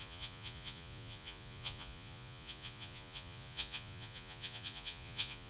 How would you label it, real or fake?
fake